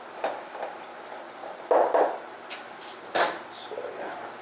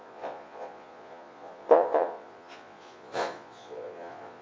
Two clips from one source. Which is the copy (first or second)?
second